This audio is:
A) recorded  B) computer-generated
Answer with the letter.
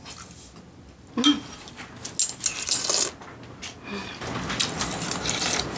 A